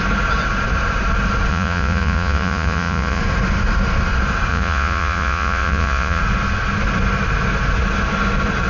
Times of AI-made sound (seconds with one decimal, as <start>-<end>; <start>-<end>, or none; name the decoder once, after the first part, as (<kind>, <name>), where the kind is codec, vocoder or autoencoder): 1.5-3.2 (vocoder, Vocos); 4.5-6.2